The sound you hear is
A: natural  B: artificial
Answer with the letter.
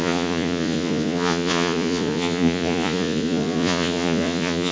B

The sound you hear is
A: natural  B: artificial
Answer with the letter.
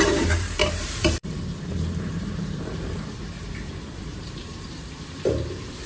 B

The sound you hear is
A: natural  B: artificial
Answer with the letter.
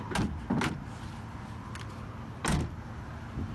A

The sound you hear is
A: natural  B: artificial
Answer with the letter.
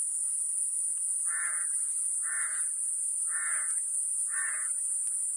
B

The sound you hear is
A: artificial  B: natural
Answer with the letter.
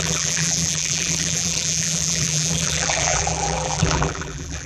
A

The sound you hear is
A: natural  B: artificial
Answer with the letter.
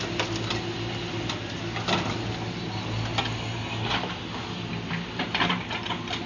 A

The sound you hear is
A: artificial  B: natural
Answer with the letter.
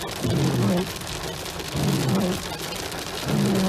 B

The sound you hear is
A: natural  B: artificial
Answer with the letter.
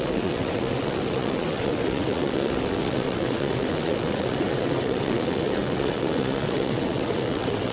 B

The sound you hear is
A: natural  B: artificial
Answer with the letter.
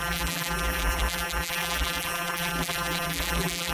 B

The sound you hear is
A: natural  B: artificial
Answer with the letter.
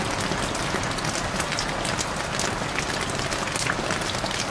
A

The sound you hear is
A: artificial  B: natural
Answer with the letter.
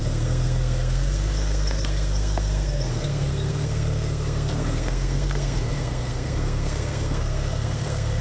A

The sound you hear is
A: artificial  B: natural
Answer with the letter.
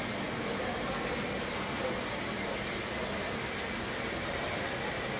B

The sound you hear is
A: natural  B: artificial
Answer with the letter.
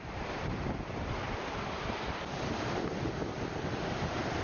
A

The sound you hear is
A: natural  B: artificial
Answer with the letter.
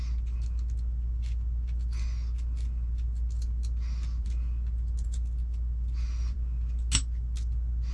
A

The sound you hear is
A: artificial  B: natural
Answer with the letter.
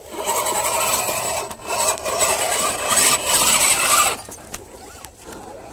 B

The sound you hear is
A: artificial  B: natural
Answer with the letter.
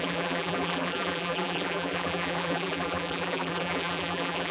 A